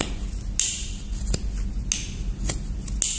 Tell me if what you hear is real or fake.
real